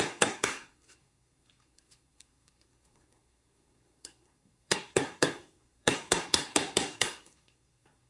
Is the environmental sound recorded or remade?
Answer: remade